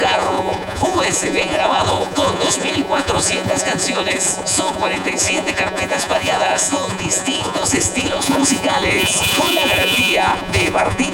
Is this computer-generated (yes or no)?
yes